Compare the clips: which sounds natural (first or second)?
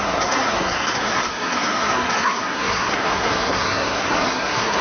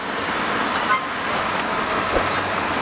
second